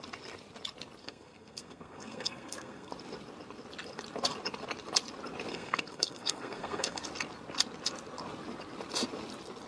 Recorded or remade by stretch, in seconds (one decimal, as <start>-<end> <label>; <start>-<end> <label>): 0.0-1.0 recorded; 1.0-2.9 remade; 2.9-5.5 recorded; 5.5-7.0 remade; 7.0-9.7 recorded